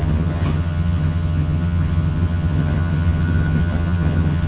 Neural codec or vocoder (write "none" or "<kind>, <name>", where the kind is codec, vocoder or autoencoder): vocoder, HiFi-GAN